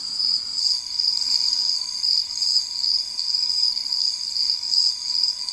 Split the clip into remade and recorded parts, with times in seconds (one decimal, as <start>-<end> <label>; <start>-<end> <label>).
0.0-0.6 recorded; 0.6-5.5 remade